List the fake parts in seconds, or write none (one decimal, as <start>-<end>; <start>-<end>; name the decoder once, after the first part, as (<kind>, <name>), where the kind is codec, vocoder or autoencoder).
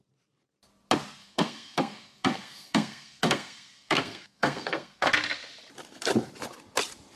1.2-5.1 (codec, SNAC)